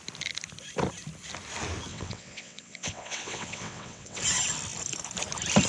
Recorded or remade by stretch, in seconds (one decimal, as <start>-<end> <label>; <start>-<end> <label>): 0.0-1.9 recorded; 1.9-4.2 remade; 4.2-5.7 recorded

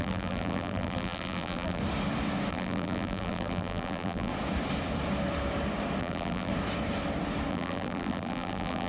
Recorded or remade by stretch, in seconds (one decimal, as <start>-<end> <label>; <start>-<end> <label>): 0.0-1.8 remade; 1.8-2.5 recorded; 2.5-4.3 remade; 4.3-6.0 recorded; 6.0-6.5 remade; 6.5-7.5 recorded; 7.5-8.9 remade

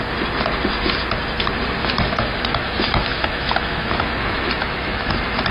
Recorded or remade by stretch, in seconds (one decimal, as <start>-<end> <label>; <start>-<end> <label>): 0.0-1.8 recorded; 1.8-5.1 remade; 5.1-5.5 recorded

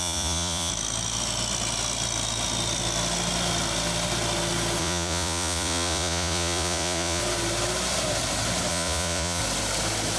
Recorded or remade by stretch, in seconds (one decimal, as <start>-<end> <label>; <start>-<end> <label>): 0.0-0.7 remade; 0.7-4.8 recorded; 4.8-7.2 remade; 7.2-8.7 recorded; 8.7-9.4 remade; 9.4-10.2 recorded